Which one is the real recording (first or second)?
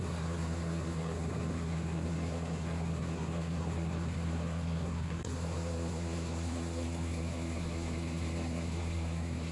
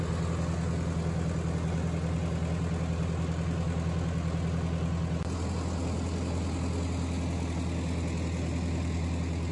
second